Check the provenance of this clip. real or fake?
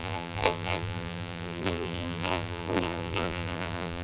fake